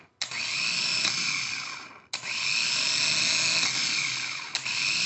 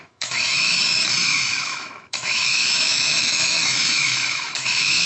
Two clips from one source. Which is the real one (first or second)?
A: first